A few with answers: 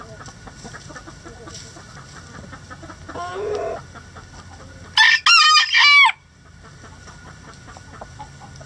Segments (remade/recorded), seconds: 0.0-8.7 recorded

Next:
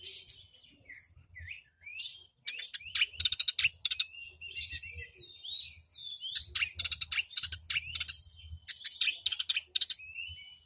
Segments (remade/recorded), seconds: 0.0-10.7 recorded

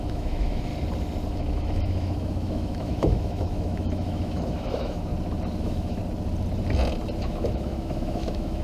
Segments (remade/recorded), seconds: 0.0-0.7 remade; 0.7-1.3 recorded; 1.3-5.1 remade; 5.1-5.6 recorded; 5.6-6.0 remade; 6.0-7.2 recorded; 7.2-8.6 remade

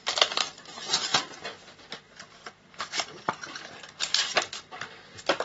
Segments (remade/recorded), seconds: 0.0-5.4 recorded

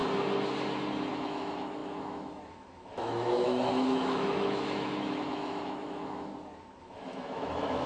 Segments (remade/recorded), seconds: 0.0-1.1 recorded; 1.1-6.3 remade; 6.3-6.8 recorded; 6.8-7.9 remade

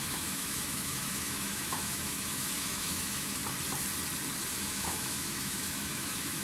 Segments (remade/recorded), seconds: 0.0-3.4 remade; 3.4-4.6 recorded; 4.6-6.4 remade

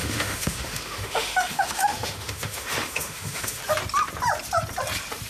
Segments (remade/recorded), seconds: 0.0-3.6 remade; 3.6-5.3 recorded

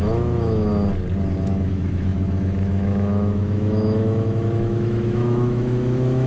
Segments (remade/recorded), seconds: 0.0-0.7 remade; 0.7-1.4 recorded; 1.4-6.3 remade